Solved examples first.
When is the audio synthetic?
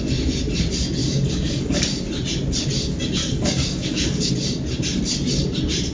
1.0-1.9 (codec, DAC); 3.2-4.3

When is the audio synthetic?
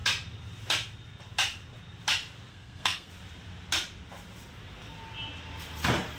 2.5-3.1 (codec, SNAC)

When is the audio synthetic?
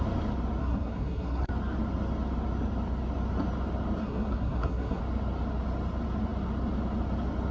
0.6-1.5 (codec, SNAC); 4.0-5.0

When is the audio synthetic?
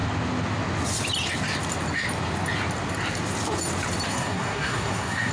4.1-5.3 (codec, SNAC)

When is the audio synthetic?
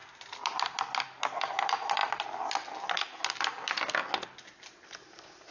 1.2-2.0 (vocoder, BigVGAN v2); 4.8-5.5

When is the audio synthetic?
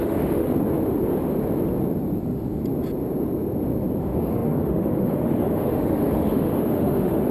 0.0-0.5 (autoencoder, DAC-VAE); 2.2-2.6; 4.0-7.3